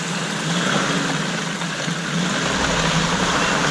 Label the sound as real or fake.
real